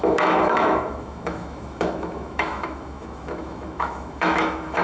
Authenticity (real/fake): fake